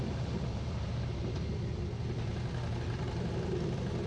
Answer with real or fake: real